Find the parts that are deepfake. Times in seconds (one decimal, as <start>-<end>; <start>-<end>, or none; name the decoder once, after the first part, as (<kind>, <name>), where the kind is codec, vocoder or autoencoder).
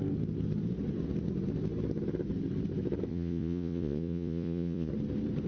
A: 3.1-4.9 (vocoder, Vocos)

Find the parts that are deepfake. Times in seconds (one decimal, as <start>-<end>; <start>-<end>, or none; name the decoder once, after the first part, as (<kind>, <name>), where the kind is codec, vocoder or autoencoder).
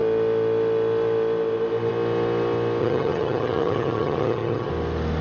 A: 2.8-4.7 (vocoder, HiFi-GAN)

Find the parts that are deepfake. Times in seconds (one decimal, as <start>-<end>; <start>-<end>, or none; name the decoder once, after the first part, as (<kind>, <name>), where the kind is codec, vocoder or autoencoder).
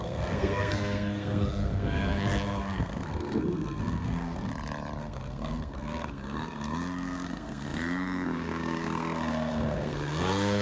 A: 0.0-4.5 (codec, SNAC); 5.0-10.6